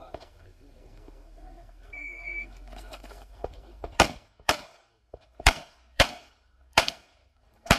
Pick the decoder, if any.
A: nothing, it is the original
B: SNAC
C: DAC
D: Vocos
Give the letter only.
B